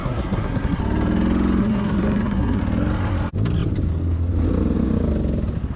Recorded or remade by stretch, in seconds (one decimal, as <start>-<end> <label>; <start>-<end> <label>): 0.0-0.8 remade; 0.8-1.6 recorded; 1.6-2.6 remade; 2.6-5.8 recorded